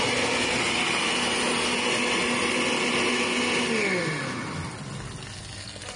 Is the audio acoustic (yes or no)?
yes